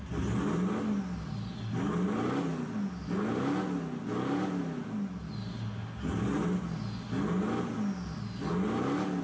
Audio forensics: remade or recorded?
recorded